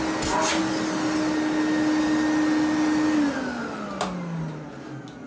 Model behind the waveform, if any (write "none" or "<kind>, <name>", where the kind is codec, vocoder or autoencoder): none